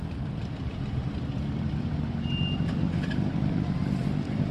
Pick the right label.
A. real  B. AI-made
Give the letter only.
B